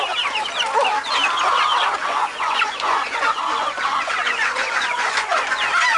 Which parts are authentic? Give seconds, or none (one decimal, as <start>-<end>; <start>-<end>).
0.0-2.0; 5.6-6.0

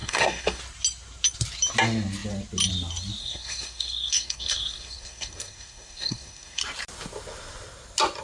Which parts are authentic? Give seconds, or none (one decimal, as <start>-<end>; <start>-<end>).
0.6-3.2; 6.6-8.2

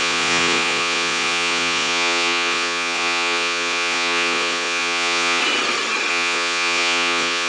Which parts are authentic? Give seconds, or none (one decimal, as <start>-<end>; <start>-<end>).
5.4-6.1

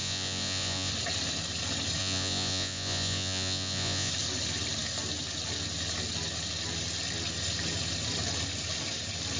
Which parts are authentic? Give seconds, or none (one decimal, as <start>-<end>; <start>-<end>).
0.9-2.0; 4.1-9.4

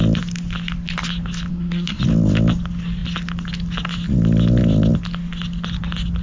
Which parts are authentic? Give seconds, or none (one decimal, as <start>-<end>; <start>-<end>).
0.0-1.5; 2.0-6.2

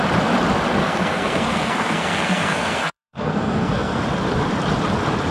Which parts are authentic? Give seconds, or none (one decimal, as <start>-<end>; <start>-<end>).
0.0-0.8; 4.0-5.3